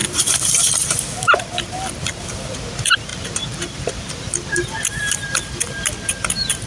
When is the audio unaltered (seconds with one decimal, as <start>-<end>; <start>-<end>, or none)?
none